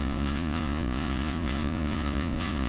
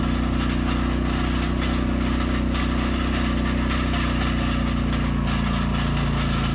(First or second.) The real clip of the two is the second